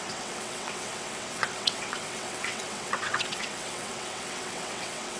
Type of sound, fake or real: fake